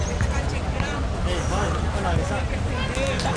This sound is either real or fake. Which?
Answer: real